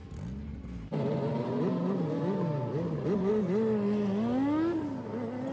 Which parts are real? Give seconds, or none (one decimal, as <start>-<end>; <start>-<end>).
0.0-5.5